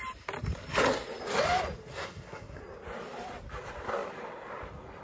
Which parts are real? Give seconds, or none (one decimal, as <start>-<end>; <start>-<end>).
0.0-1.9; 2.6-5.0